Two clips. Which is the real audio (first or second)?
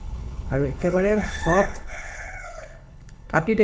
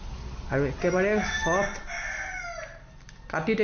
second